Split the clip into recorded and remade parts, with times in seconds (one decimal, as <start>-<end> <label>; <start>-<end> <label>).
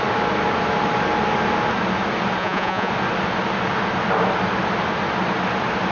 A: 0.0-2.4 recorded; 2.4-2.9 remade; 2.9-5.9 recorded